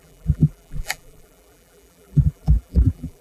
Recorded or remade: remade